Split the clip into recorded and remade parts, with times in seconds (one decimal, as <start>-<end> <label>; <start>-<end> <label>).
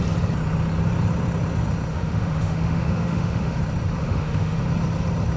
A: 0.0-1.9 recorded; 1.9-3.6 remade; 3.6-4.0 recorded; 4.0-4.6 remade; 4.6-5.4 recorded